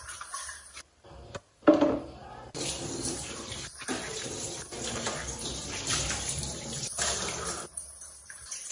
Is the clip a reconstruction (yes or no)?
yes